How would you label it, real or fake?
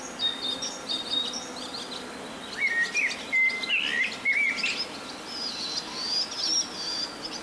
real